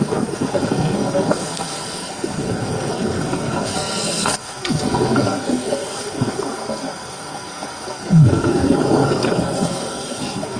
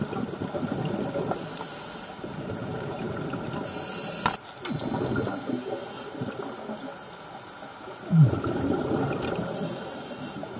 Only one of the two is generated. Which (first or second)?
first